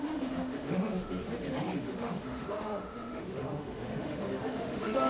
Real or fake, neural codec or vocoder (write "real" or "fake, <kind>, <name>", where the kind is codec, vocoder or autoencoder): fake, autoencoder, DAC-VAE